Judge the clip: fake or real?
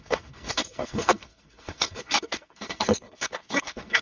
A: fake